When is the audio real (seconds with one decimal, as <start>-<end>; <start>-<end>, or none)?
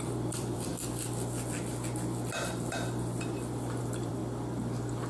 0.7-3.8; 4.2-5.1